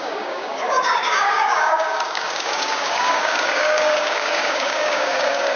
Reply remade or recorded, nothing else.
remade